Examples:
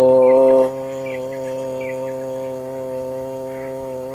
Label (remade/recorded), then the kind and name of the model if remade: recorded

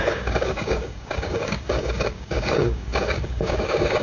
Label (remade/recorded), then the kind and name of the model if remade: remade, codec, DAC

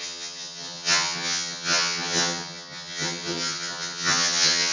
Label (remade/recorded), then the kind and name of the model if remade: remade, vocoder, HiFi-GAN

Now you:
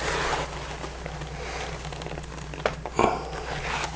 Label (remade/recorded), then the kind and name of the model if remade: recorded